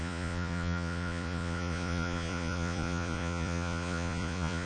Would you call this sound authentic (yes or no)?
no